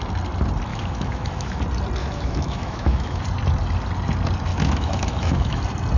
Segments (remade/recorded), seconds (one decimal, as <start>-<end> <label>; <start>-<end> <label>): 0.0-0.7 recorded; 0.7-1.6 remade; 1.6-2.0 recorded; 2.0-3.2 remade; 3.2-4.5 recorded; 4.5-5.6 remade; 5.6-6.0 recorded